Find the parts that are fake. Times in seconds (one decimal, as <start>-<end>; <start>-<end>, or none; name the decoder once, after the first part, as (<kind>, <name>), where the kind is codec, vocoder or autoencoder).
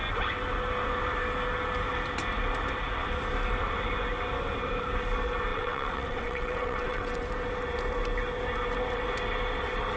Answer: 5.5-7.3 (vocoder, WaveNeXt)